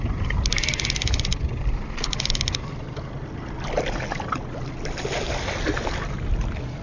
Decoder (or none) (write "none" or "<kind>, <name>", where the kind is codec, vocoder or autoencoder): none